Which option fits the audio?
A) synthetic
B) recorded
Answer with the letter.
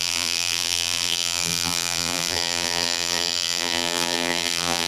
A